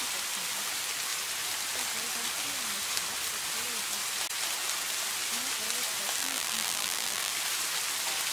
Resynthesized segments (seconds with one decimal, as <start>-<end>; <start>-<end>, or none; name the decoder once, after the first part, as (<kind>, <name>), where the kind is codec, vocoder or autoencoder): 6.2-7.3 (vocoder, BigVGAN v2)